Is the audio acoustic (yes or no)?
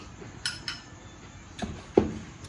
yes